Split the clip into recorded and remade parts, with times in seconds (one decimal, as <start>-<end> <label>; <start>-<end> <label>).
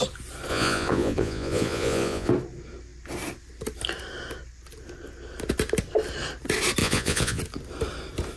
0.0-0.5 recorded; 0.5-2.3 remade; 2.3-6.8 recorded; 6.8-7.4 remade; 7.4-8.4 recorded